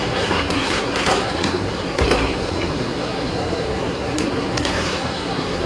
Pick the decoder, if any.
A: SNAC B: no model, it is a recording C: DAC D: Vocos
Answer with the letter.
A